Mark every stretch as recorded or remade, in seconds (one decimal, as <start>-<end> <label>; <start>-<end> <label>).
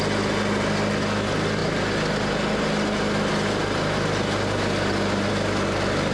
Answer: 0.0-6.1 recorded